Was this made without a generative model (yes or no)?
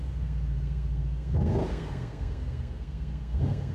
no